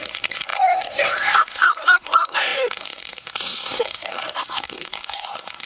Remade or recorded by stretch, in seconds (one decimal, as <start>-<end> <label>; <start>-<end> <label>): 0.0-5.7 remade